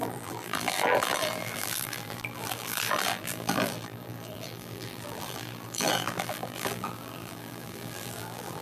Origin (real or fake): fake